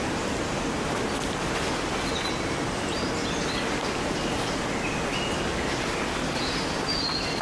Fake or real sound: real